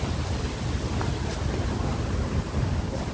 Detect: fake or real real